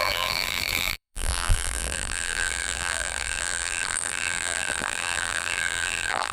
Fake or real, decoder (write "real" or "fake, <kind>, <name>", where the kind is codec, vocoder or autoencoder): fake, vocoder, BigVGAN v2